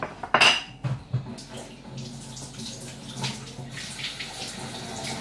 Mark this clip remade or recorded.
recorded